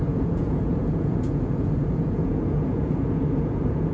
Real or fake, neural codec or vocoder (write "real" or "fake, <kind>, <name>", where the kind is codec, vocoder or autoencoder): fake, vocoder, Vocos